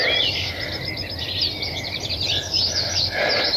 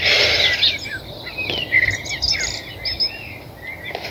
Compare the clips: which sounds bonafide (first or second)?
second